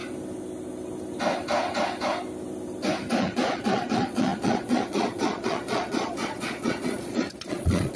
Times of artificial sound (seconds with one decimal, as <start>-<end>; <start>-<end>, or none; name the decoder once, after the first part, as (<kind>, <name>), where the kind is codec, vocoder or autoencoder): 3.2-8.0 (vocoder, Vocos)